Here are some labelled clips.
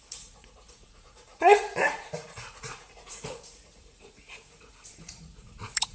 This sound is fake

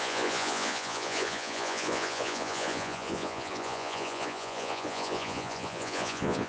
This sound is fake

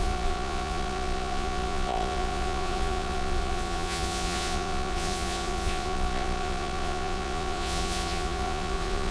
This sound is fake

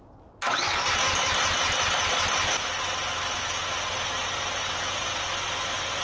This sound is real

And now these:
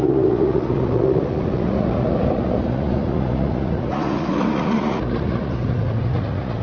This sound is fake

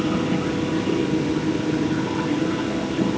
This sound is real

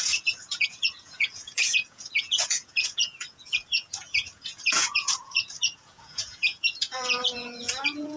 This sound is fake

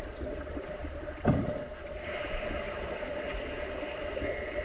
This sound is real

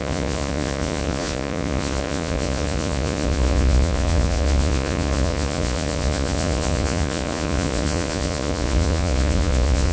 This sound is fake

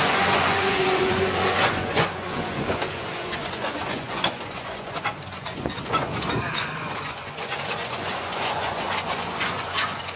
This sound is fake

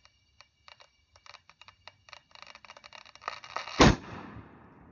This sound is real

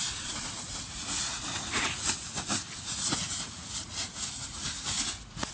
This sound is fake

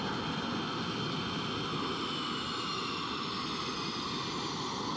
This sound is real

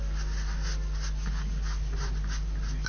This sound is real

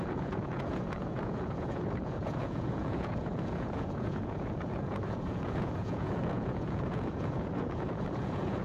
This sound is fake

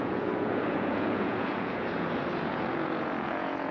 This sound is fake